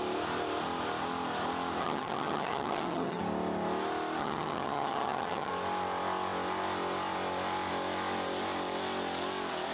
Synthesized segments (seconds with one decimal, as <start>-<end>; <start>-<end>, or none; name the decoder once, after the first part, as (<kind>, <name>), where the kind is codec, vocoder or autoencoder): 1.8-3.2 (vocoder, HiFi-GAN); 4.2-5.5